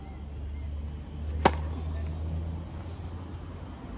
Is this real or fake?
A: real